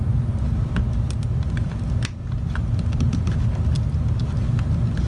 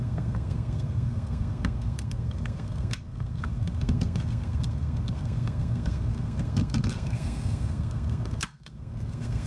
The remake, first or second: second